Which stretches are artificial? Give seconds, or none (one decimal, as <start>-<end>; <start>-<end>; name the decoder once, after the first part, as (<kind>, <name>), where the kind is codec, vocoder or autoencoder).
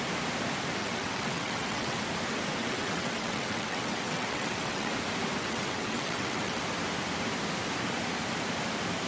0.8-2.0 (vocoder, WaveNeXt); 2.6-4.9; 5.4-6.6